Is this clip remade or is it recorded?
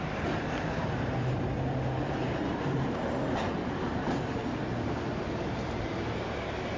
remade